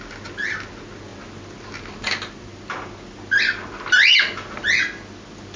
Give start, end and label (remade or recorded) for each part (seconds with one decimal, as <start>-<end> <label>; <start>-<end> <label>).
0.0-5.6 recorded